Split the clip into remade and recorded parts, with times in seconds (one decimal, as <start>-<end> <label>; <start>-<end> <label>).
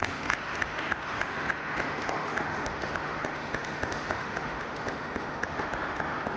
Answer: 0.0-6.4 remade